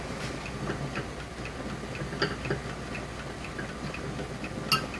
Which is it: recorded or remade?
recorded